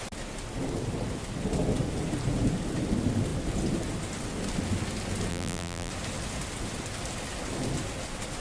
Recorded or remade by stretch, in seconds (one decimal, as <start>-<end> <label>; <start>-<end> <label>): 0.0-5.3 recorded; 5.3-5.9 remade; 5.9-8.4 recorded